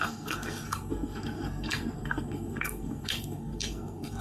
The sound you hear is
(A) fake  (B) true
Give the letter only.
A